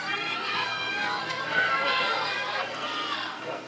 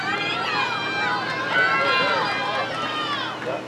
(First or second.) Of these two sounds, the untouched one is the second